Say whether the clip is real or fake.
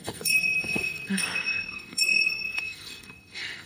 fake